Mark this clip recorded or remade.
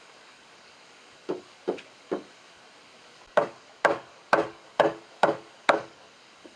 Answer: remade